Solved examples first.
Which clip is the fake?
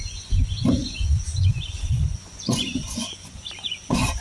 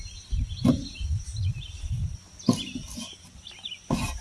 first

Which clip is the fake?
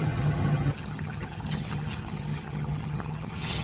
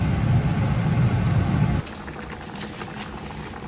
first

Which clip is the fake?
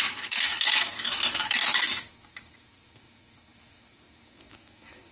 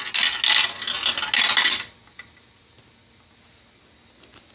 first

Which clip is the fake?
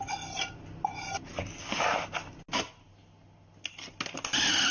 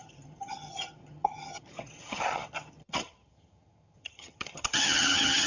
second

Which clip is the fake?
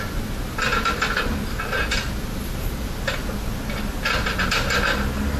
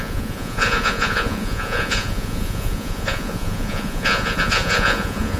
second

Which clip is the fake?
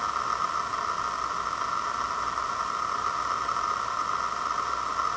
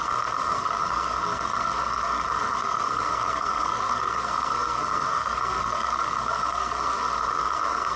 second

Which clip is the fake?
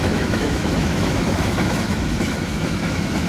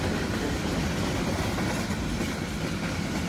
first